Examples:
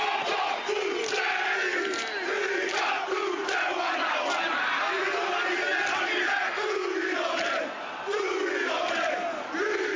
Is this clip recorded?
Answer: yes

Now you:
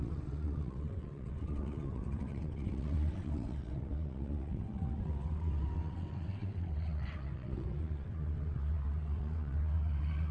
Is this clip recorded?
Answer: no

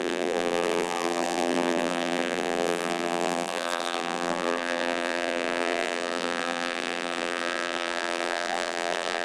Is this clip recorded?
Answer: no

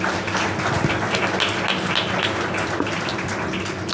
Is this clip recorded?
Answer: yes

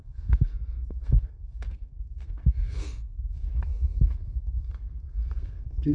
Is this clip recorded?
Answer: no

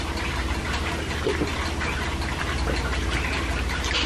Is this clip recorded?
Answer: yes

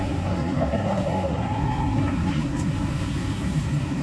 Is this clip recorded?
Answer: no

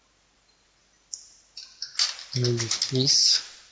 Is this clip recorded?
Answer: yes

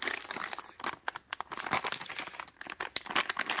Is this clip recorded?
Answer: yes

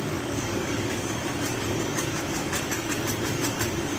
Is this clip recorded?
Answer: no